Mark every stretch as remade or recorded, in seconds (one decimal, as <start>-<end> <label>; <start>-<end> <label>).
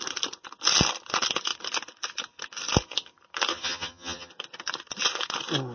0.0-3.5 recorded; 3.5-4.3 remade; 4.3-5.7 recorded